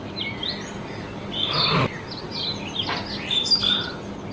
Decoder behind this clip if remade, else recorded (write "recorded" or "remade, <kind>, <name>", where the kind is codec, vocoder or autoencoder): recorded